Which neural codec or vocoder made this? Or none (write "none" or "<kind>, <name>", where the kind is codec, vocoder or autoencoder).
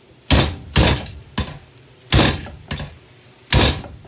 none